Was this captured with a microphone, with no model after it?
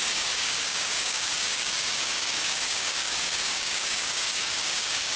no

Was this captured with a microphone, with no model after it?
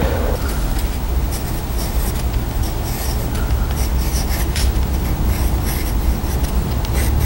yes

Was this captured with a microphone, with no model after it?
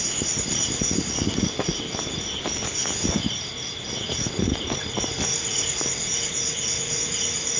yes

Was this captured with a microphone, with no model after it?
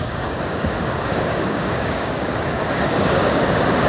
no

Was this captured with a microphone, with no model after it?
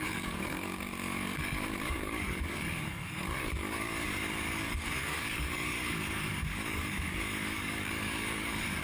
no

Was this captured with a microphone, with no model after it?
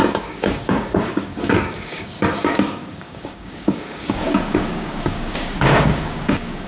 no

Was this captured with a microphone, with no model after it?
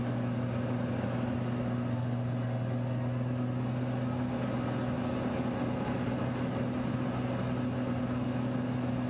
yes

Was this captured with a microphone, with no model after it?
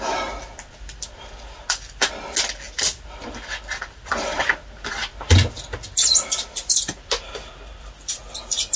yes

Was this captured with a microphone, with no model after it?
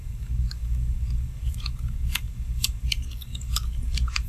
no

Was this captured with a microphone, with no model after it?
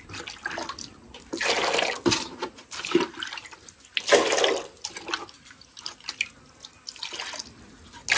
yes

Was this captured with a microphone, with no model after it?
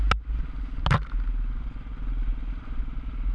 yes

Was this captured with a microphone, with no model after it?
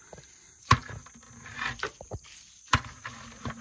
yes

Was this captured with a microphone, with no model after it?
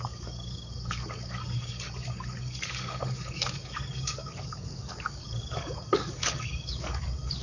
no